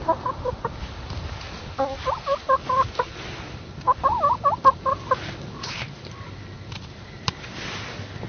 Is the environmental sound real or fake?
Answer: real